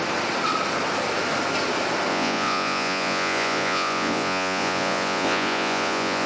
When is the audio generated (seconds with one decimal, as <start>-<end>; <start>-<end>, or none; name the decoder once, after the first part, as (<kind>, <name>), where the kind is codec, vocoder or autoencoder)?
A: 2.1-6.3 (vocoder, Vocos)